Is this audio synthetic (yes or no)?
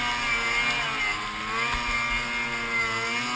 no